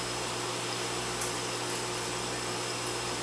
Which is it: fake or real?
real